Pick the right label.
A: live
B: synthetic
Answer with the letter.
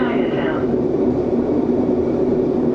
B